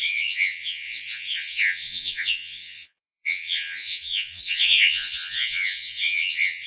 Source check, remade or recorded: remade